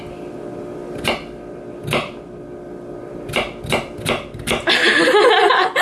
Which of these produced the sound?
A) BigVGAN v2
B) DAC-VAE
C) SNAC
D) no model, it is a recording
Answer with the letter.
D